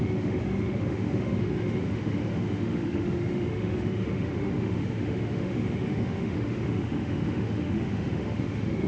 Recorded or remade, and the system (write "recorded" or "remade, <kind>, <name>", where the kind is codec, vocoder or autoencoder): remade, autoencoder, DAC-VAE